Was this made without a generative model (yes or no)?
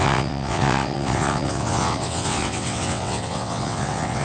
no